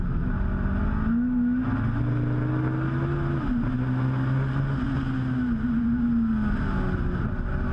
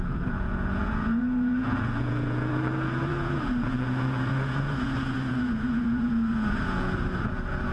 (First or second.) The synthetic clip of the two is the second